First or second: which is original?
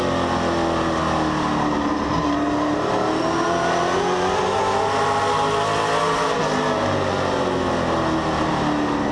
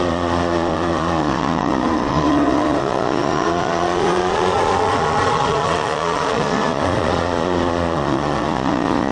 first